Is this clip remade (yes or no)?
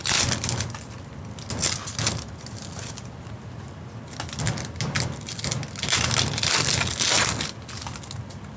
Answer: no